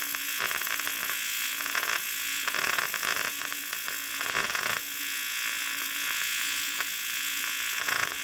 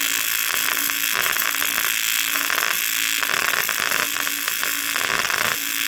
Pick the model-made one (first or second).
first